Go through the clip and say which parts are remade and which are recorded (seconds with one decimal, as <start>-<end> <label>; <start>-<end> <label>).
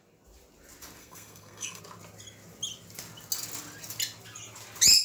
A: 0.0-1.0 recorded; 1.0-1.8 remade; 1.8-5.0 recorded